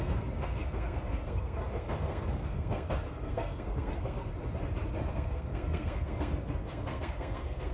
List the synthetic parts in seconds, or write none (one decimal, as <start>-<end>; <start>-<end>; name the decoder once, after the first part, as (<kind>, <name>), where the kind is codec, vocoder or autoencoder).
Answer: 0.0-4.3 (codec, SNAC); 5.1-7.7